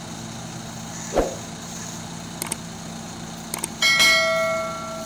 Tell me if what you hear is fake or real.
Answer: real